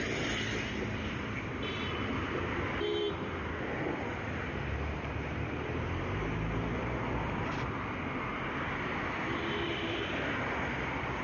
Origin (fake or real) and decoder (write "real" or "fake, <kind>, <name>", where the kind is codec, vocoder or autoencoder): fake, vocoder, BigVGAN v2